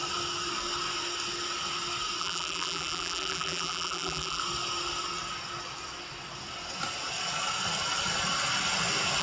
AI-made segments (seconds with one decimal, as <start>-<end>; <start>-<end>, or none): 2.2-4.4